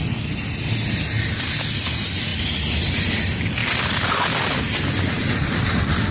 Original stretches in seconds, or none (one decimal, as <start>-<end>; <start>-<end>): 0.0-6.1